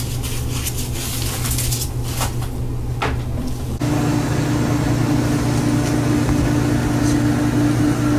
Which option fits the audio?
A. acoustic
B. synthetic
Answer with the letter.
A